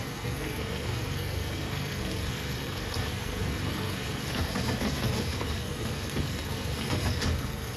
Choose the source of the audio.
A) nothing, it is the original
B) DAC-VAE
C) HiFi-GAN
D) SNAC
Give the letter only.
D